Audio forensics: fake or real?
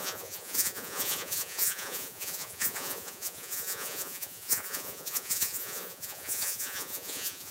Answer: fake